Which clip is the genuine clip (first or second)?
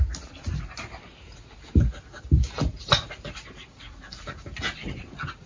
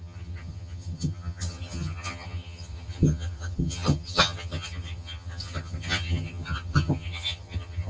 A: first